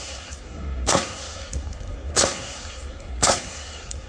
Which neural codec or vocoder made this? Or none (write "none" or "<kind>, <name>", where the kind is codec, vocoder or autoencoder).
codec, SNAC